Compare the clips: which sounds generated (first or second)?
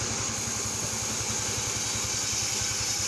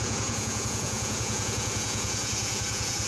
second